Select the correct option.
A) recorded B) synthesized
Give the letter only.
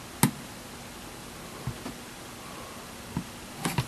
A